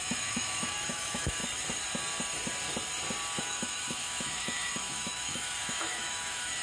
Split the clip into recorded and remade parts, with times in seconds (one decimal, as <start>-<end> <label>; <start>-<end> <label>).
0.0-1.4 remade; 1.4-3.4 recorded; 3.4-6.6 remade